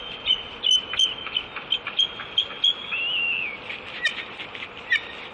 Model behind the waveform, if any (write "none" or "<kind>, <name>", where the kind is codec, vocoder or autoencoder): none